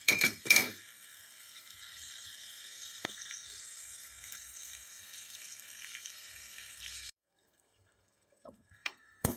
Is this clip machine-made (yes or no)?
yes